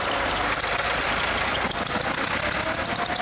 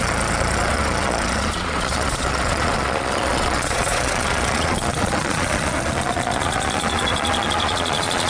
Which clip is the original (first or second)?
first